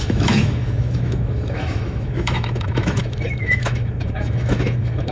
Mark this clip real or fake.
fake